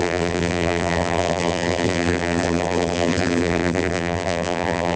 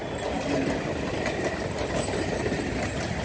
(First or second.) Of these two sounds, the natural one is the second